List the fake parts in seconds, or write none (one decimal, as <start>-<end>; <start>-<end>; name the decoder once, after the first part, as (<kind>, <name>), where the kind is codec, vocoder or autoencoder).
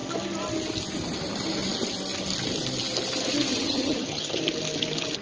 3.5-4.4 (vocoder, HiFi-GAN)